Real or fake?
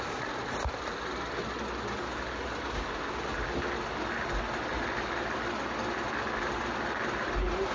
real